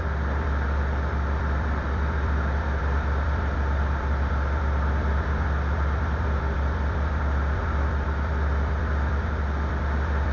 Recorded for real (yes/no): no